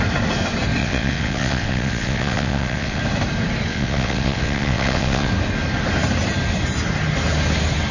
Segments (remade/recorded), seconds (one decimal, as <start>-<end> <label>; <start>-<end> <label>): 0.0-0.8 recorded; 0.8-3.0 remade; 3.0-3.7 recorded; 3.7-5.3 remade; 5.3-7.9 recorded

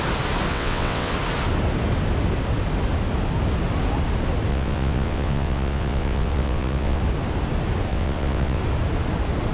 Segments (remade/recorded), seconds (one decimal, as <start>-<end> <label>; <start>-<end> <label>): 0.0-0.5 recorded; 0.5-1.1 remade; 1.1-4.5 recorded; 4.5-7.0 remade; 7.0-7.9 recorded; 7.9-8.6 remade; 8.6-9.5 recorded

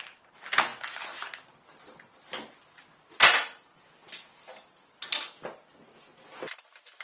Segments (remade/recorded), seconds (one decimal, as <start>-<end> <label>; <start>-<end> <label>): 0.0-7.0 recorded

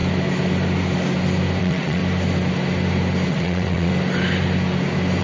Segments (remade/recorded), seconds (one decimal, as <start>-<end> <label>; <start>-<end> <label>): 0.0-1.6 recorded; 1.6-2.0 remade; 2.0-3.3 recorded; 3.3-3.9 remade; 3.9-5.2 recorded

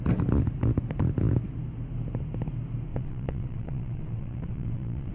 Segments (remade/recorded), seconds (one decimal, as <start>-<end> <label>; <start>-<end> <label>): 0.0-2.9 recorded; 2.9-5.1 remade

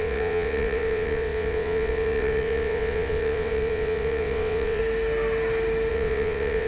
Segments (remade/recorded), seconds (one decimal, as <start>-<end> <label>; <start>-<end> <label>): 0.0-4.8 remade; 4.8-5.9 recorded; 5.9-6.7 remade